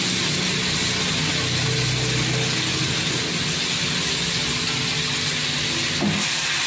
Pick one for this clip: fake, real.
real